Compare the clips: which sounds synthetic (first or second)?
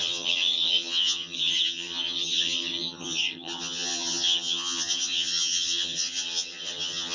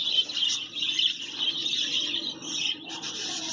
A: first